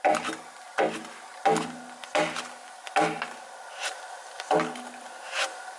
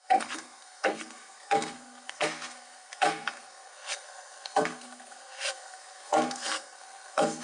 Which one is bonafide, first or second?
first